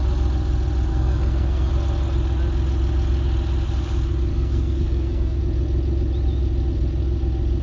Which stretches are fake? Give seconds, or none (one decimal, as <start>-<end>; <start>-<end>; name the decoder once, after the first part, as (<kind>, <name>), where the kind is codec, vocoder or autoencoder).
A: 0.9-1.7 (codec, SNAC); 4.3-5.4